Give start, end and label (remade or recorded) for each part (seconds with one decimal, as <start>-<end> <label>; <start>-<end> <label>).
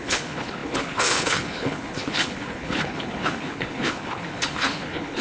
0.0-5.2 remade